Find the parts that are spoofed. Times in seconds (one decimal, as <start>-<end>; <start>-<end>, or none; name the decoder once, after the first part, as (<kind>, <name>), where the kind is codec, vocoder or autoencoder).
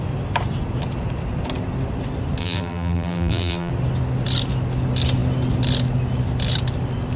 2.4-3.7 (vocoder, BigVGAN v2)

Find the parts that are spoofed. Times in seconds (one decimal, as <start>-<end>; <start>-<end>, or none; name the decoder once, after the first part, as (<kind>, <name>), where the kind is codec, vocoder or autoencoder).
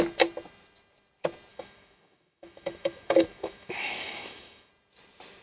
1.5-4.7 (autoencoder, DAC-VAE)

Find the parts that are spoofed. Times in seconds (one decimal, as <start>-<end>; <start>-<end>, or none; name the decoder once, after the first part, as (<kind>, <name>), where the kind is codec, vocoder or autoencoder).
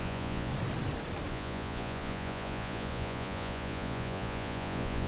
0.0-0.5 (vocoder, Vocos); 1.3-5.1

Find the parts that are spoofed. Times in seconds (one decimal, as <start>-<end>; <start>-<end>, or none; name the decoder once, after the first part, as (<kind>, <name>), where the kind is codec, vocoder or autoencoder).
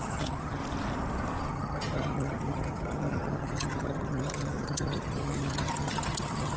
0.0-0.6 (vocoder, HiFi-GAN); 1.5-6.6